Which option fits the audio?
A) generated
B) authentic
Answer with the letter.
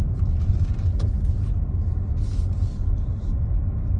B